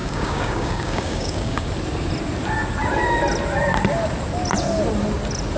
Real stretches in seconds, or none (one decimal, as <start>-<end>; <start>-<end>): 1.7-5.6